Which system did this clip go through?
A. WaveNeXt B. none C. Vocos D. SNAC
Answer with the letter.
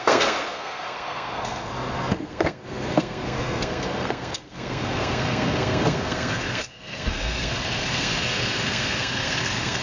D